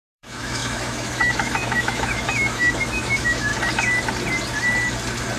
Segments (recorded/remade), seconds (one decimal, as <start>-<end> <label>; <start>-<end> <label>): 0.0-3.5 remade; 3.5-5.4 recorded